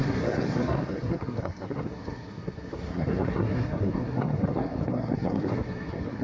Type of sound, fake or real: fake